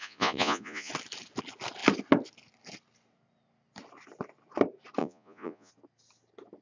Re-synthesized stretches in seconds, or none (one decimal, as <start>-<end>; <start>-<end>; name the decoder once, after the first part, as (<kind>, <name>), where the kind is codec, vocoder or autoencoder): 0.0-0.9 (vocoder, Vocos); 5.0-5.7